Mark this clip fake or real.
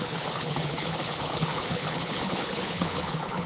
fake